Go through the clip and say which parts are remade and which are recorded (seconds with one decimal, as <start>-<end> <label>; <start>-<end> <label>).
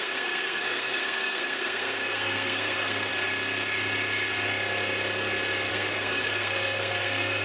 0.0-3.1 remade; 3.1-5.7 recorded; 5.7-7.4 remade